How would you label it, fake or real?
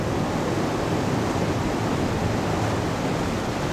real